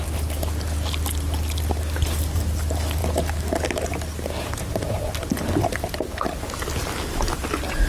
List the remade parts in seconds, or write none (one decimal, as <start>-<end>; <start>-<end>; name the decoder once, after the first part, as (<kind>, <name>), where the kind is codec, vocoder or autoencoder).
none